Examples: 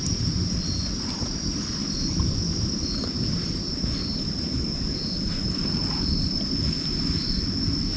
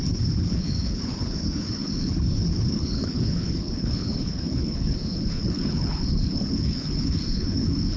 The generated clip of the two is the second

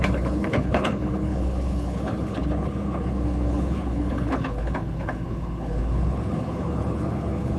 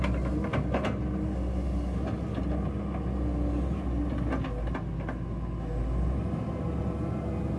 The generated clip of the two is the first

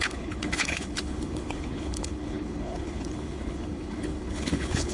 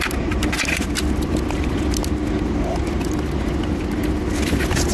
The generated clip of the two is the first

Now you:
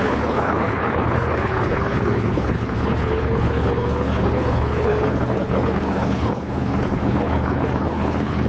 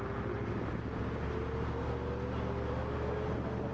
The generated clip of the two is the first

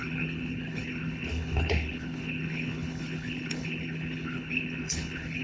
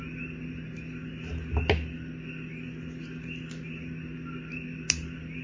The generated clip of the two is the first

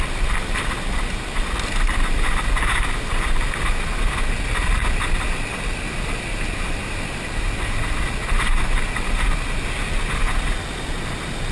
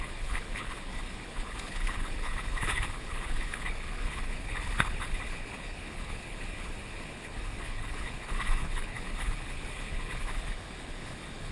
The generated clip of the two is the second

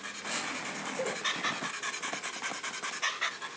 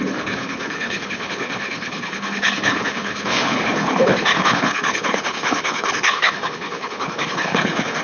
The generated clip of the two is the second